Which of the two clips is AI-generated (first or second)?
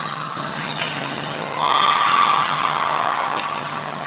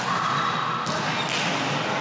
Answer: first